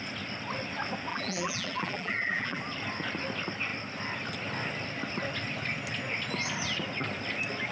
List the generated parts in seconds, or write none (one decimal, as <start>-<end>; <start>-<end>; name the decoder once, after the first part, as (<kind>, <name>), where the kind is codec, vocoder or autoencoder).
1.1-2.6 (vocoder, BigVGAN v2)

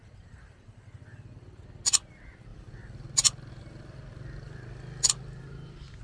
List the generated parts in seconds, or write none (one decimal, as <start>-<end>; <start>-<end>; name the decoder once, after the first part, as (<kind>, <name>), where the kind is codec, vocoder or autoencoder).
0.0-0.9 (vocoder, BigVGAN v2)